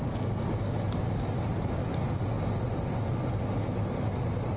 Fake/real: real